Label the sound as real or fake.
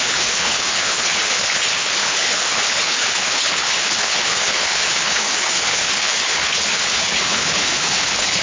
fake